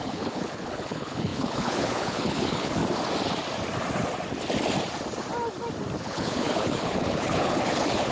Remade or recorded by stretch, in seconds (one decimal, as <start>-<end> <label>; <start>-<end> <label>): 0.0-2.8 remade; 2.8-6.0 recorded; 6.0-8.1 remade